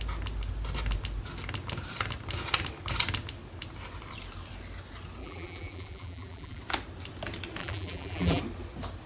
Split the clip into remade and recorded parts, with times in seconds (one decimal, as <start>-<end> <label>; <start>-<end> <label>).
0.0-5.2 recorded; 5.2-6.6 remade; 6.6-7.6 recorded; 7.6-8.4 remade; 8.4-9.1 recorded